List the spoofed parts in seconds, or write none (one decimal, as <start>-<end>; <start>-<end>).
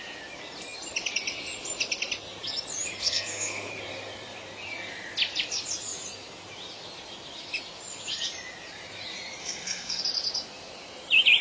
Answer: 3.0-3.7; 9.4-10.0